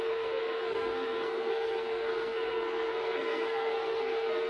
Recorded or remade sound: remade